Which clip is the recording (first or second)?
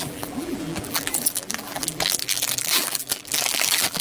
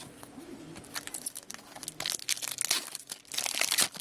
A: second